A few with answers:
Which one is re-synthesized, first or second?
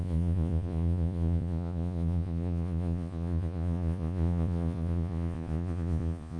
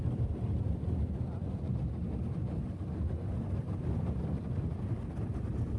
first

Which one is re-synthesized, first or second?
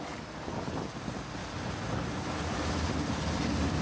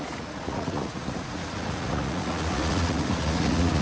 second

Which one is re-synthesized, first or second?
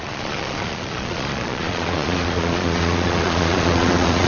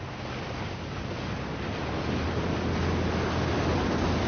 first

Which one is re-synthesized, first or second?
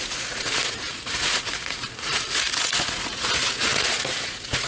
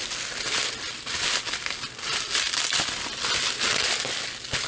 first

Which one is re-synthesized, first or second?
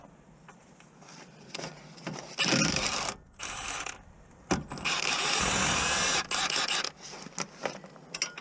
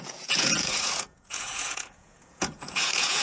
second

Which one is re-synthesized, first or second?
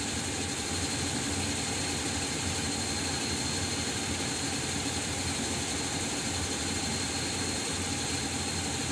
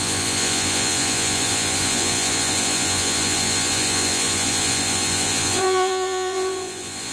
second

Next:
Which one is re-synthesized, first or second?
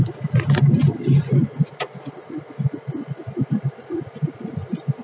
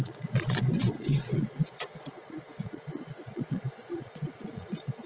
second